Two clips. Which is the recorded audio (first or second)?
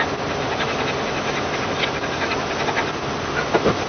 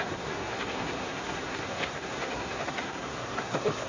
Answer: first